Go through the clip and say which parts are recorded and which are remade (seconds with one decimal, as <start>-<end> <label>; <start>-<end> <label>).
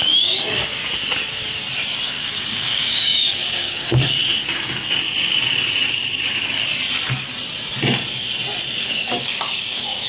0.0-0.8 remade; 0.8-2.1 recorded; 2.1-4.2 remade; 4.2-8.8 recorded; 8.8-10.1 remade